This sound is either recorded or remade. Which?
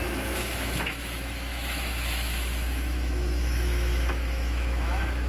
remade